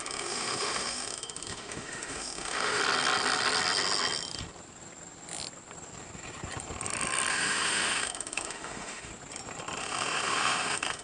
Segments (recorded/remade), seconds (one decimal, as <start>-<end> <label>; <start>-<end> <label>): 0.0-2.8 remade; 2.8-7.3 recorded; 7.3-9.1 remade; 9.1-9.8 recorded; 9.8-11.0 remade